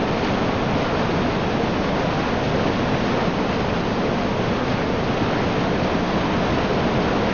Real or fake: real